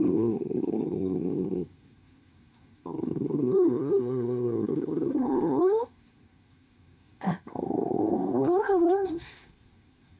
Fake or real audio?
fake